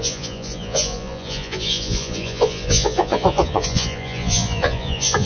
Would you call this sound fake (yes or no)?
yes